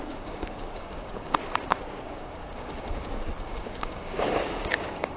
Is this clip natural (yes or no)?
no